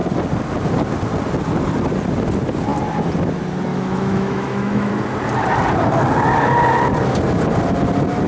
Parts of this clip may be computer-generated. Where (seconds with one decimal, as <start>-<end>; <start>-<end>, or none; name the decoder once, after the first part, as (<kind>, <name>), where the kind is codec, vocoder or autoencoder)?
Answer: 3.7-4.9 (autoencoder, DAC-VAE)